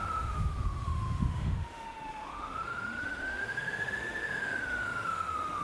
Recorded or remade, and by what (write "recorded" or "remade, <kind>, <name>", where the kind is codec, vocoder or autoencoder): remade, autoencoder, DAC-VAE